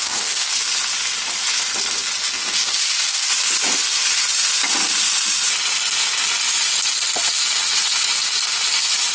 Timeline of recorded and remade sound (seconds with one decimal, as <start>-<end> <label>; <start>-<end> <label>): 0.0-0.5 remade; 0.5-2.4 recorded; 2.4-3.3 remade; 3.3-9.1 recorded